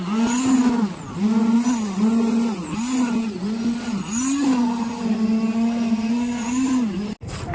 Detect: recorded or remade recorded